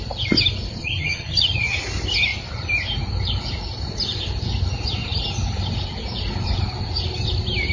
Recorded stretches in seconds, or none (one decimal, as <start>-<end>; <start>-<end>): 0.0-0.8; 1.8-7.7